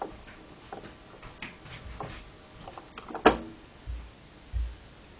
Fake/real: real